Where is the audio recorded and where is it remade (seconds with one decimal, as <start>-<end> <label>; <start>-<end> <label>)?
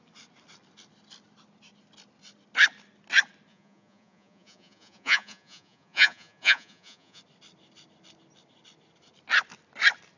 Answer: 0.0-3.5 recorded; 3.5-7.2 remade; 7.2-10.2 recorded